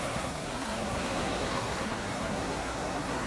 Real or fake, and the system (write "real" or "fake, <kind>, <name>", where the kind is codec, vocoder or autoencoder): fake, codec, SNAC